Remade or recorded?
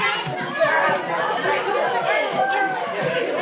recorded